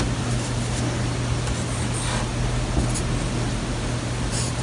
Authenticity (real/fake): real